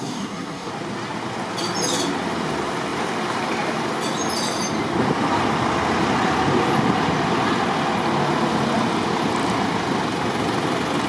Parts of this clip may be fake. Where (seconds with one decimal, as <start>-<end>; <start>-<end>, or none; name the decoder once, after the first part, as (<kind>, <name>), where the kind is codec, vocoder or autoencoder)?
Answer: 0.0-0.7 (codec, SNAC)